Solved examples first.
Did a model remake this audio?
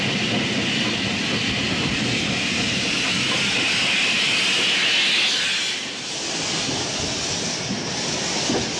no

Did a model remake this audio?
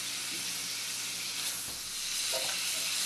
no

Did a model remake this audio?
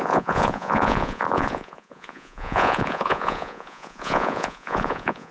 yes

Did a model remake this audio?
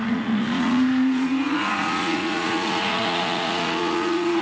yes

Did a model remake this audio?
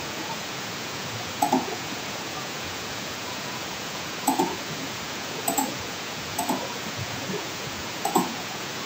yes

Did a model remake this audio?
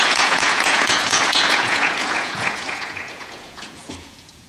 yes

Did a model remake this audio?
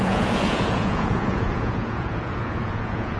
yes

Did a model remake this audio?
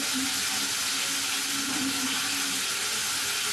no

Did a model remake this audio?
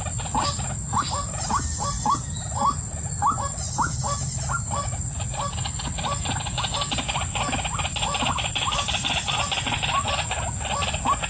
no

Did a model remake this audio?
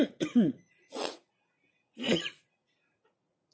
yes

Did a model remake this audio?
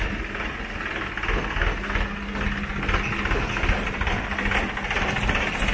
no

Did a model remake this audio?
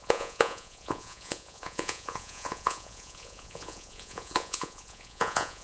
yes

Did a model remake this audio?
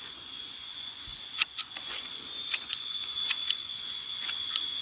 yes